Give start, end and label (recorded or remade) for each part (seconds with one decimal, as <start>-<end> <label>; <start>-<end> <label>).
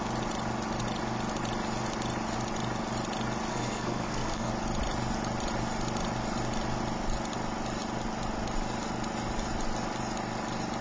0.0-3.5 recorded; 3.5-4.5 remade; 4.5-10.8 recorded